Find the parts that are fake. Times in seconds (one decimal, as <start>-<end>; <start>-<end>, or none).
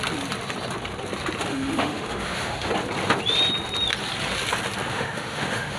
1.5-2.7; 4.9-5.8